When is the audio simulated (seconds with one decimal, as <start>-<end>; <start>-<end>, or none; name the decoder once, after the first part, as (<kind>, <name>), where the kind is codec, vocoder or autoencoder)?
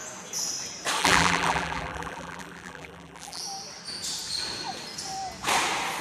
1.0-3.4 (vocoder, BigVGAN v2)